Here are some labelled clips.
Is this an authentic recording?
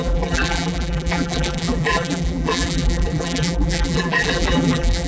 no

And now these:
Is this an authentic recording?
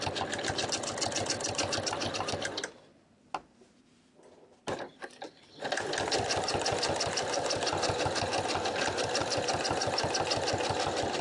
yes